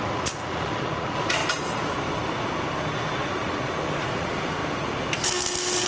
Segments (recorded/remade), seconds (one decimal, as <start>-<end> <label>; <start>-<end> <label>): 0.0-1.4 remade; 1.4-3.2 recorded; 3.2-4.6 remade; 4.6-5.9 recorded